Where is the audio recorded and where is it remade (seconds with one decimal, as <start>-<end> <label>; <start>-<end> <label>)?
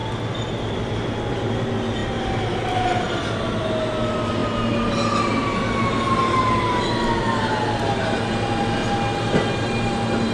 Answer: 0.0-10.3 recorded